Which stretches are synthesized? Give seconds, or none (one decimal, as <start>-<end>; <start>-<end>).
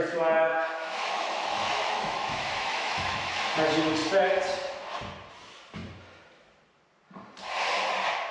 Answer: 0.5-3.4